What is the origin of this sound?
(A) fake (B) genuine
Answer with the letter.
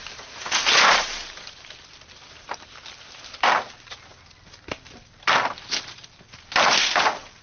B